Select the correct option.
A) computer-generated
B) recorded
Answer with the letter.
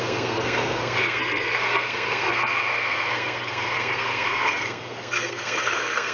A